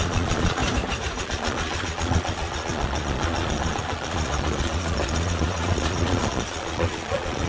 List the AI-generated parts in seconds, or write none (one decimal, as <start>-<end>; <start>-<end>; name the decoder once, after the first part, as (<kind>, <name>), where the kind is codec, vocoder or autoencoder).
0.0-0.6 (vocoder, Vocos); 1.2-7.5